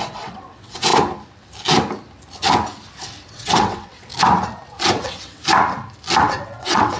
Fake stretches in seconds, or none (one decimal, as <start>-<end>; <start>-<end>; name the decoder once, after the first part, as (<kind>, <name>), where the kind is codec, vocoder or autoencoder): 0.0-0.9 (vocoder, WaveNeXt); 3.3-4.1; 4.9-5.4; 6.2-7.0